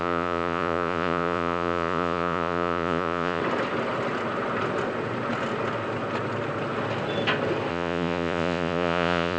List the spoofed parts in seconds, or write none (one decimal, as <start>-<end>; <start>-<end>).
0.0-3.4; 7.7-9.4